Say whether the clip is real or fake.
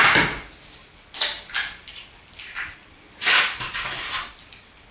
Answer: real